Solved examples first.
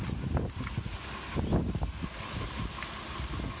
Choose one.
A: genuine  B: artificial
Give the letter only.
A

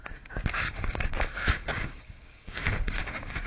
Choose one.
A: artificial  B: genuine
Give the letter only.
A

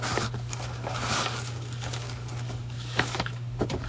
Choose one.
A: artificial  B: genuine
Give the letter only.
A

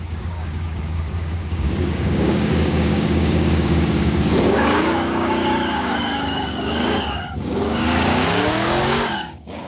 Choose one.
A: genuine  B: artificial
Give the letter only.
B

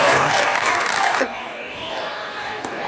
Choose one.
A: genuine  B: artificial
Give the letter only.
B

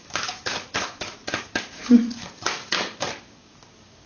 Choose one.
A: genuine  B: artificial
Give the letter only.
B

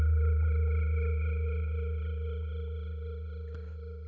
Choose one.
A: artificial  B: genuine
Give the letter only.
B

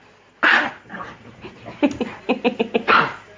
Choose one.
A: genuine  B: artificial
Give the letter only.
A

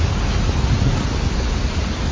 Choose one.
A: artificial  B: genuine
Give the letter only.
B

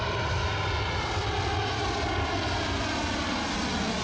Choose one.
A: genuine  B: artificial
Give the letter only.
A